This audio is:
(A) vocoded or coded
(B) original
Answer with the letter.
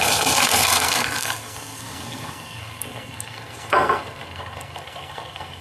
A